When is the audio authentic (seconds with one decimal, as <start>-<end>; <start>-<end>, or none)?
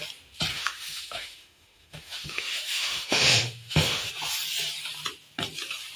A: 0.0-0.5; 4.1-6.0